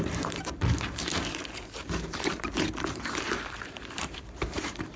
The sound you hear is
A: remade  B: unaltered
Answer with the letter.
A